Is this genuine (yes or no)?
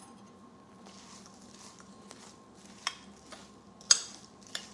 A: yes